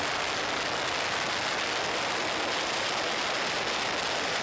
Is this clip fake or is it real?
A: real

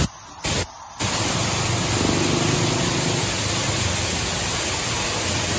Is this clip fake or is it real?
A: real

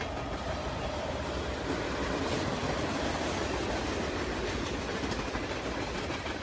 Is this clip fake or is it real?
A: real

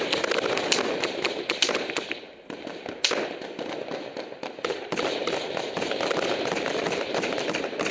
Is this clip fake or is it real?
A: real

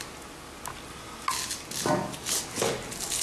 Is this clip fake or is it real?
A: real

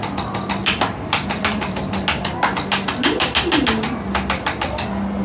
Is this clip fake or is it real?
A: real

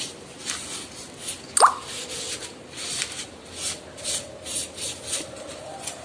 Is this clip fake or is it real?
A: real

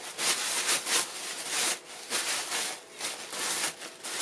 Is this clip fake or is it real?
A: real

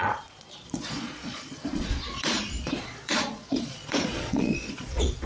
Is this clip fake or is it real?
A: fake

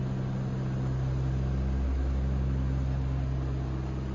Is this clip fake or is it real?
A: real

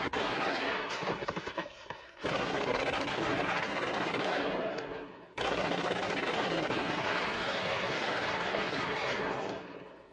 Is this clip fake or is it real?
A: fake